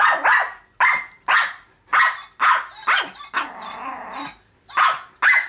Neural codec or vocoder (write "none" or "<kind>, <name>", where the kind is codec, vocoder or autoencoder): none